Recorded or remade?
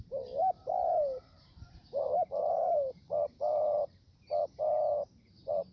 remade